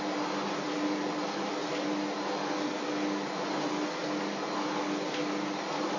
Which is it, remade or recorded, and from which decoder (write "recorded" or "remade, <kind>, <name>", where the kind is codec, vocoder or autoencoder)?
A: recorded